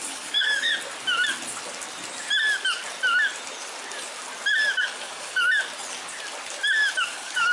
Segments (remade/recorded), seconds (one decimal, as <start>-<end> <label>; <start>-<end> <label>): 0.0-0.7 remade; 0.7-4.8 recorded; 4.8-5.5 remade; 5.5-7.0 recorded; 7.0-7.5 remade